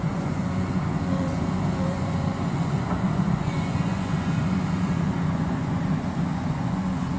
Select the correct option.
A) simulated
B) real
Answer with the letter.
A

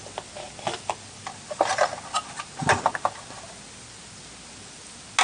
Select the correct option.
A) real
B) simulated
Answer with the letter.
A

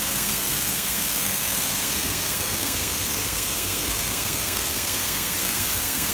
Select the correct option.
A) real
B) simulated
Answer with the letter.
B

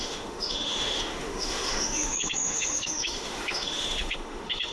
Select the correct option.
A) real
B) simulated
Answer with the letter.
B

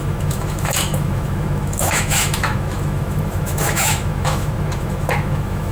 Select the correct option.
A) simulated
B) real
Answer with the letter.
A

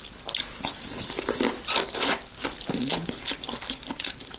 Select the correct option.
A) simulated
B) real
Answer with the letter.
B